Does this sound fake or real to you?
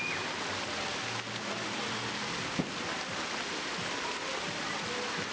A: real